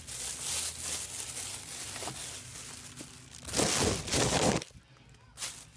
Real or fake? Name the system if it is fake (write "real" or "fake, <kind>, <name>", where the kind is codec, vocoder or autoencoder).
real